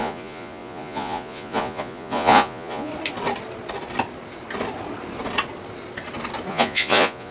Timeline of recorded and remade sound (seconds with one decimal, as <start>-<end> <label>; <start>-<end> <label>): 0.0-2.9 remade; 2.9-6.5 recorded; 6.5-7.3 remade